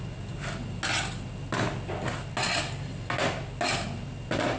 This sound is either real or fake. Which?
real